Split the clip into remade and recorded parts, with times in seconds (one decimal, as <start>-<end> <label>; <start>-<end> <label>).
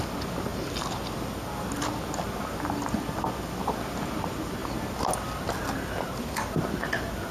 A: 0.0-7.3 recorded